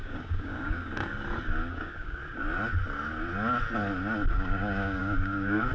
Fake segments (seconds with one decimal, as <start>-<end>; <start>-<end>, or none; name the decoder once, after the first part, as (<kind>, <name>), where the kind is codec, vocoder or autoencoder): 0.0-1.1 (codec, DAC); 1.7-2.2; 4.3-5.7